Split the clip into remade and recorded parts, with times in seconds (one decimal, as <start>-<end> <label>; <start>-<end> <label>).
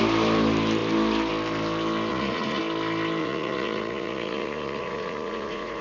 0.0-2.1 recorded; 2.1-2.6 remade; 2.6-3.2 recorded; 3.2-5.8 remade